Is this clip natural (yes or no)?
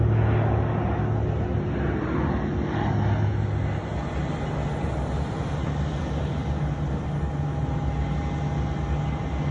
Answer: yes